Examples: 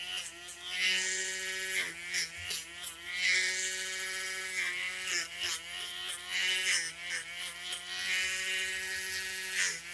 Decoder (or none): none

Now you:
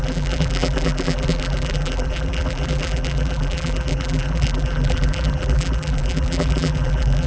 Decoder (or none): vocoder, BigVGAN v2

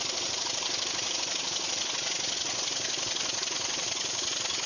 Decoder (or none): none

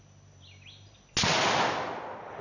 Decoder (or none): none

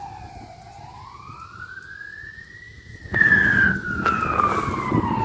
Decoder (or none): none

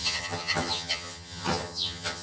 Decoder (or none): vocoder, HiFi-GAN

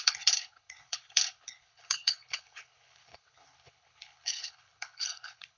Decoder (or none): codec, HILCodec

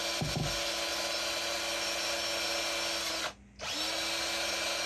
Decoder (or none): none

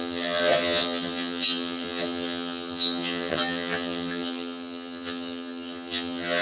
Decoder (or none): vocoder, HiFi-GAN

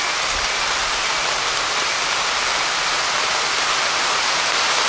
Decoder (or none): none